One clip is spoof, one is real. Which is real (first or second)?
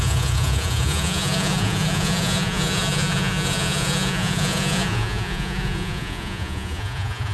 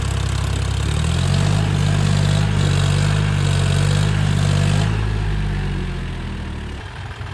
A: second